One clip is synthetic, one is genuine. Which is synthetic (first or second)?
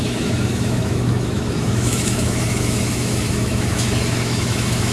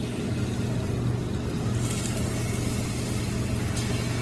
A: first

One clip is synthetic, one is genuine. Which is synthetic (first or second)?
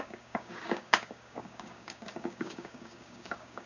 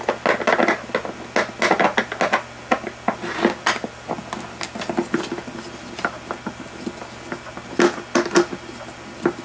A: first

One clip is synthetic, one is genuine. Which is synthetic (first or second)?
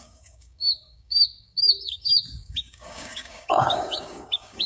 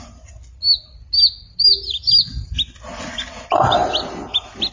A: first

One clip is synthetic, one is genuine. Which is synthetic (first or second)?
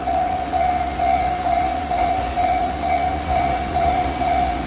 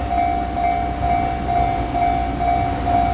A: first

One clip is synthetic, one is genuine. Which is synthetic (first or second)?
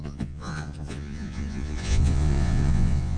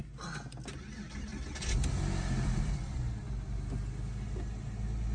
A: first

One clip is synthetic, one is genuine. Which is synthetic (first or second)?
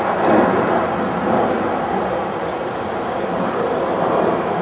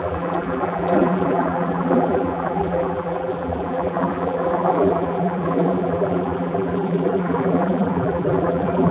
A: second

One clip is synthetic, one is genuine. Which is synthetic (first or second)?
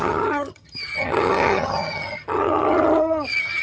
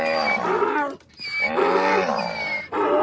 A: first